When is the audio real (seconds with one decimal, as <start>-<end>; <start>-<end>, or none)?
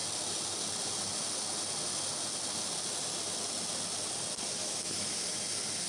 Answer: 0.0-4.6; 5.2-5.9